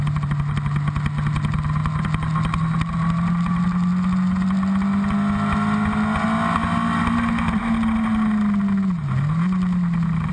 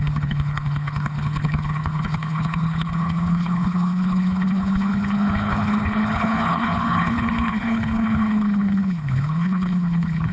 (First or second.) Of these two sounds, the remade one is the second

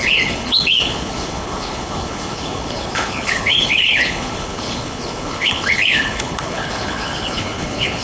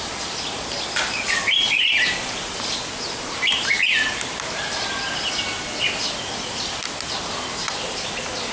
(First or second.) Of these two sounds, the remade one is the first